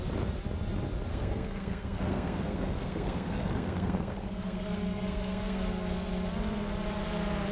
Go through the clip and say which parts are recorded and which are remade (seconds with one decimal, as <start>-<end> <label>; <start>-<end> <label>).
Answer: 0.0-1.1 recorded; 1.1-5.6 remade; 5.6-7.5 recorded